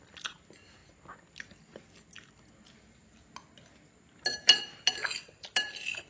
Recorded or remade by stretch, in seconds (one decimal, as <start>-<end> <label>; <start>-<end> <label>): 0.0-6.1 recorded